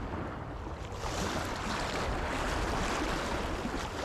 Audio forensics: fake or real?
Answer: real